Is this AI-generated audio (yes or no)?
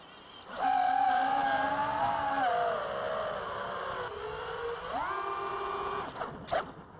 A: no